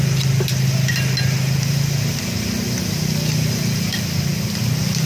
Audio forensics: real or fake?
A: real